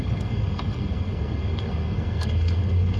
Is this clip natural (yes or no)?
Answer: no